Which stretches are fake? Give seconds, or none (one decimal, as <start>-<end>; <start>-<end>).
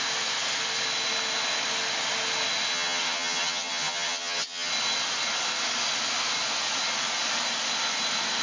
2.7-4.7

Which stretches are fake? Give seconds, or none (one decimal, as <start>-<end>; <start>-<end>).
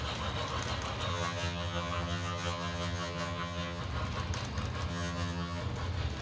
1.1-3.8; 4.9-5.6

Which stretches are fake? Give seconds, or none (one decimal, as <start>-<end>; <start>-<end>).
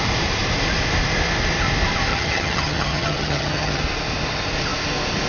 2.1-3.8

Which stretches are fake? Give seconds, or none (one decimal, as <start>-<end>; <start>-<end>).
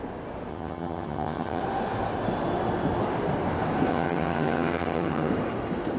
0.5-1.6; 3.9-5.3